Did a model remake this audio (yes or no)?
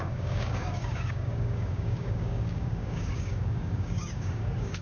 yes